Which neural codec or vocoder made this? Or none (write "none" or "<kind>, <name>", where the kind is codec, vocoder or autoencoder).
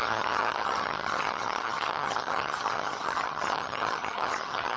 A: vocoder, HiFi-GAN